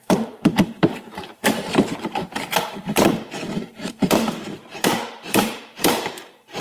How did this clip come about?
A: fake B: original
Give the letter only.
A